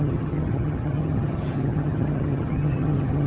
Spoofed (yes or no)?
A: yes